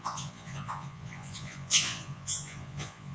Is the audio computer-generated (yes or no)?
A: yes